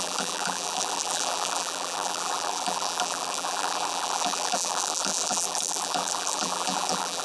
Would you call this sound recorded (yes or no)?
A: no